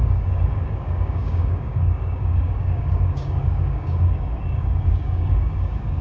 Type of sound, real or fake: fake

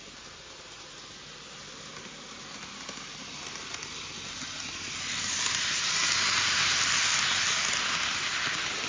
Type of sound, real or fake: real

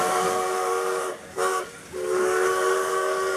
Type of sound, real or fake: fake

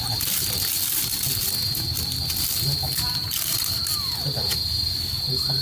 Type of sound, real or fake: real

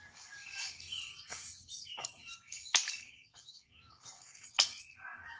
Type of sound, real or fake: fake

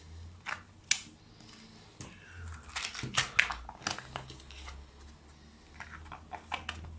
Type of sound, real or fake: real